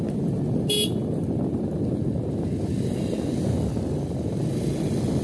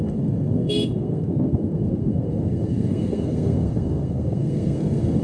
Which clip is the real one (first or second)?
first